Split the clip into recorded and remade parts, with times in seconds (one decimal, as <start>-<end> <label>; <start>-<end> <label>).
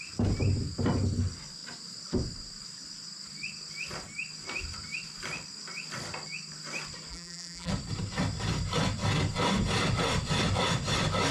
0.0-7.1 recorded; 7.1-7.7 remade; 7.7-11.3 recorded